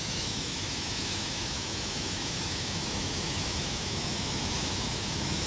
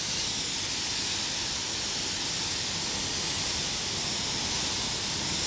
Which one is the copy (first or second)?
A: first